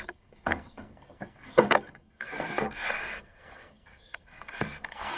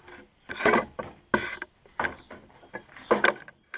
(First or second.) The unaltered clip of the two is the second